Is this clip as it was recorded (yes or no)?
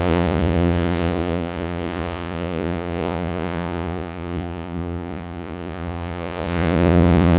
no